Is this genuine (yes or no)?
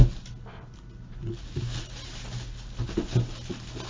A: yes